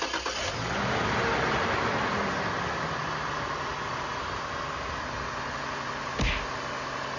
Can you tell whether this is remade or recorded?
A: recorded